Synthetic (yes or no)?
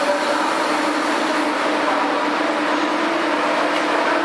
no